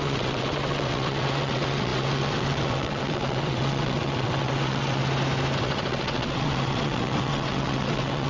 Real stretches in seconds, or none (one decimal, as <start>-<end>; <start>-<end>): 5.0-5.6

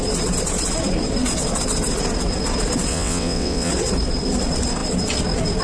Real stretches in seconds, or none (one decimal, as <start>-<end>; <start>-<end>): 0.0-2.9; 3.7-5.6

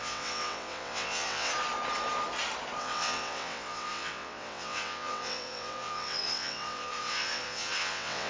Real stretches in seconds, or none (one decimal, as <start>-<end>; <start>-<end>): 1.5-2.8